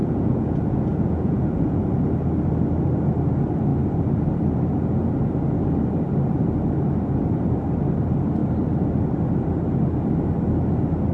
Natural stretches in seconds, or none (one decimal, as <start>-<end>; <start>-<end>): 2.0-11.1